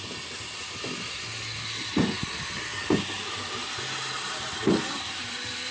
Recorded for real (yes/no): yes